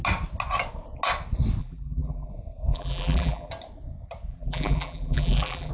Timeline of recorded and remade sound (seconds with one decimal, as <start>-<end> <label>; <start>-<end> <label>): 0.0-1.6 recorded; 1.6-2.3 remade; 2.3-2.7 recorded; 2.7-3.5 remade; 3.5-4.3 recorded; 4.3-5.7 remade